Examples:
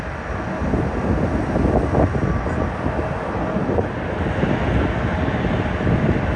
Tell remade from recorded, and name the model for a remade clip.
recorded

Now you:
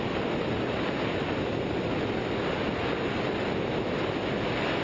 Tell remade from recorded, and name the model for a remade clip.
recorded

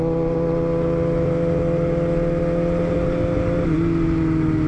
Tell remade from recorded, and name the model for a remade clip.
recorded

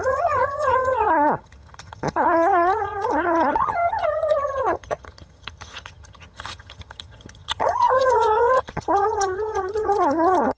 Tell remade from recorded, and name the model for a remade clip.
remade, vocoder, HiFi-GAN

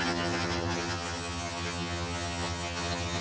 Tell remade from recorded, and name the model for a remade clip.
remade, vocoder, HiFi-GAN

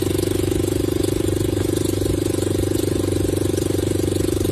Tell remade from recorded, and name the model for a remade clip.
recorded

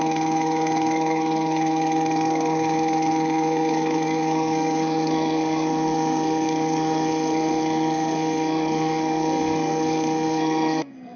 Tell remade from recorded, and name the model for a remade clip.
remade, codec, SNAC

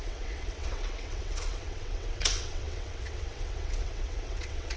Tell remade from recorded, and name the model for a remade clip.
remade, vocoder, WaveNeXt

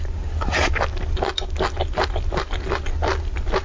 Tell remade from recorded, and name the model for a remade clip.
recorded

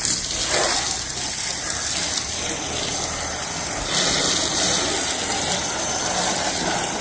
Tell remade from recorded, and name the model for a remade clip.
recorded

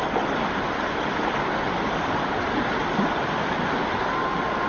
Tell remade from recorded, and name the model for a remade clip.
recorded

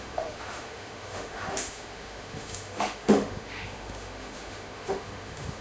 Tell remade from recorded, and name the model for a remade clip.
remade, autoencoder, DAC-VAE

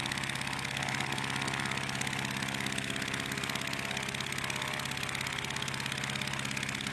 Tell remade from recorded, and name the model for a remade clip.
recorded